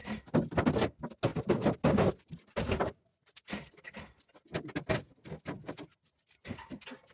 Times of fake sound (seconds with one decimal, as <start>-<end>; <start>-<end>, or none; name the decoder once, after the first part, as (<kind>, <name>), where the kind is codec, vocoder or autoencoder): 3.1-3.7 (vocoder, BigVGAN v2)